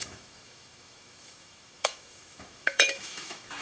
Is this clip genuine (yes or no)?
no